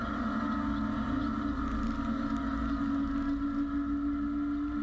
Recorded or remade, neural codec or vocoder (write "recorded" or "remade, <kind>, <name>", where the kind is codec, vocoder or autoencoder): recorded